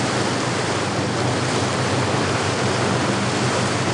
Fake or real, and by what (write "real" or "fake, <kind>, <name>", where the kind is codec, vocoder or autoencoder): real